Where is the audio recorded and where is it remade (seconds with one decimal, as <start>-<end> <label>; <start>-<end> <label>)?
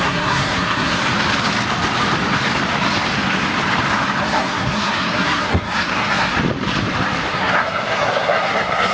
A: 0.0-1.0 remade; 1.0-4.2 recorded; 4.2-6.3 remade; 6.3-7.3 recorded; 7.3-8.9 remade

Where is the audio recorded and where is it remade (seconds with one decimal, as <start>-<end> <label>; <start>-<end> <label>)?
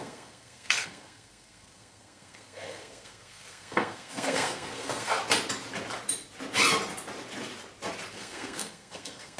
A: 0.0-5.2 remade; 5.2-8.1 recorded; 8.1-9.4 remade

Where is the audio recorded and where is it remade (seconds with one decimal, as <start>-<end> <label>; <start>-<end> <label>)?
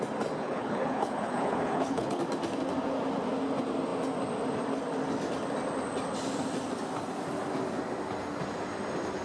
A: 0.0-0.4 recorded; 0.4-2.2 remade; 2.2-9.2 recorded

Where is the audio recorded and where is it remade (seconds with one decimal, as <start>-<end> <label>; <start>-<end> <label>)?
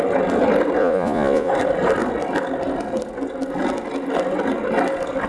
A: 0.0-0.8 recorded; 0.8-1.5 remade; 1.5-5.3 recorded